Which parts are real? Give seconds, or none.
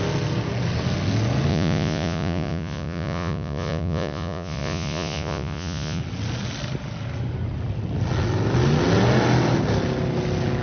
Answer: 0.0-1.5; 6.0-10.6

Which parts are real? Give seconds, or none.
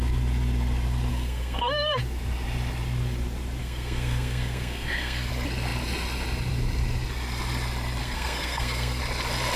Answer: 0.0-1.1; 2.0-3.6; 5.3-8.0; 9.0-9.6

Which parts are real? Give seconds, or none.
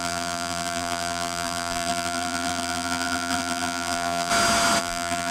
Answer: 4.3-4.8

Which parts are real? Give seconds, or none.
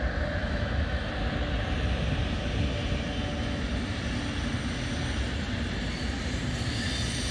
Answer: 0.0-0.4; 1.1-7.3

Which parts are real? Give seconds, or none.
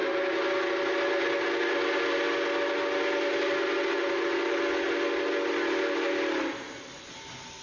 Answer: 0.0-7.6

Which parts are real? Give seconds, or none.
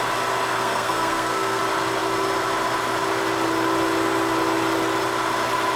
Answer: 0.0-0.5; 1.6-5.8